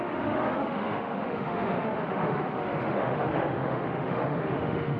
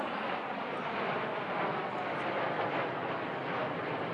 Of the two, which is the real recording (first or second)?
second